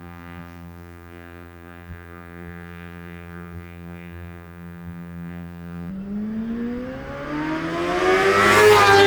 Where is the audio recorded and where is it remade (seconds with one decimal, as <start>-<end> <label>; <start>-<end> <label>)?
0.0-5.9 remade; 5.9-9.1 recorded